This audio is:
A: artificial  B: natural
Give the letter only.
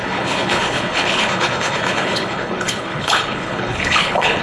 A